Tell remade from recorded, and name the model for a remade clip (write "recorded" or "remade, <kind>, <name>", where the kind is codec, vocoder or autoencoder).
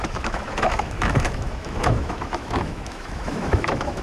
remade, autoencoder, DAC-VAE